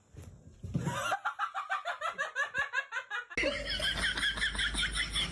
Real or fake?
real